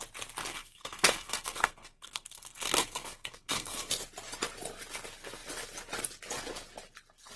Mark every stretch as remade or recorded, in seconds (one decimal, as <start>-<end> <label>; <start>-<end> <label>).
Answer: 0.0-0.5 recorded; 0.5-3.9 remade; 3.9-7.4 recorded